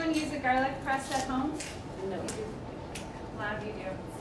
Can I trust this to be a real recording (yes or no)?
yes